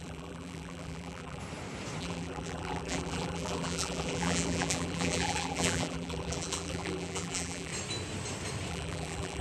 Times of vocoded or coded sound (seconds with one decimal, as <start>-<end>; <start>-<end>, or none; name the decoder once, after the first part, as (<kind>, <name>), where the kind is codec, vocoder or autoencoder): 0.0-1.4 (vocoder, BigVGAN v2); 2.0-7.7; 8.7-9.4